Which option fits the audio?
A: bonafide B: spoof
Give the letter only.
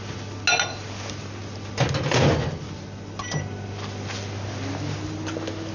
A